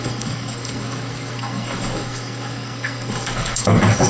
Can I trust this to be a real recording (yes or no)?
no